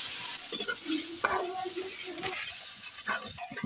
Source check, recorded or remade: remade